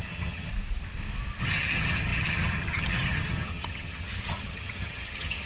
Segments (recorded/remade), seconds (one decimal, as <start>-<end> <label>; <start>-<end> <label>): 0.0-0.5 remade; 0.5-1.4 recorded; 1.4-5.5 remade